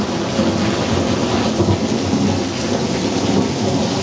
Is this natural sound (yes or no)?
yes